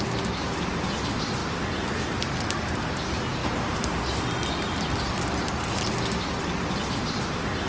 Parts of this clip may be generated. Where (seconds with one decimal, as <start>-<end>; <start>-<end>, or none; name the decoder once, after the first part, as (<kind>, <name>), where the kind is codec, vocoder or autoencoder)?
none